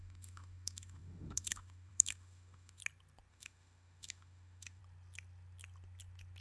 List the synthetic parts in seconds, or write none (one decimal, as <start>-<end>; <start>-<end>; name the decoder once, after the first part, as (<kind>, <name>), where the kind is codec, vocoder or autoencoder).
0.0-2.8 (autoencoder, DAC-VAE); 3.3-4.8